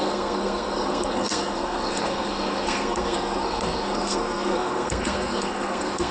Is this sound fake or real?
fake